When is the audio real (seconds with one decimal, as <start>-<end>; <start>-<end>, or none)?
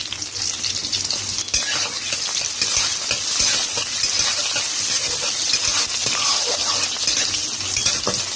0.0-8.4